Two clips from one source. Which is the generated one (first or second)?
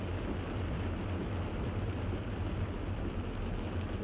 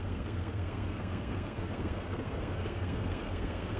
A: second